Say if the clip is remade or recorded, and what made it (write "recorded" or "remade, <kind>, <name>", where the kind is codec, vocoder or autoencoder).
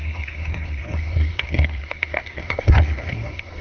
remade, codec, SNAC